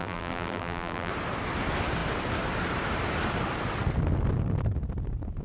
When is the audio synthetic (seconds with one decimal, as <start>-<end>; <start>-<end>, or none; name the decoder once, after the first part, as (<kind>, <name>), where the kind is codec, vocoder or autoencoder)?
0.0-1.1 (vocoder, BigVGAN v2)